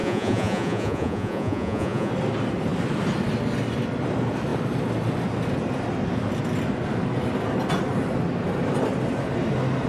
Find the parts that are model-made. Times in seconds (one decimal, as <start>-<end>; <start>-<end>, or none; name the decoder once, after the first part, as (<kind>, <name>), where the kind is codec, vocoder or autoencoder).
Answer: 0.0-2.1 (vocoder, Vocos)